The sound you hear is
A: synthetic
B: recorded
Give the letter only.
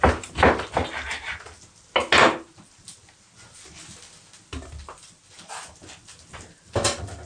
B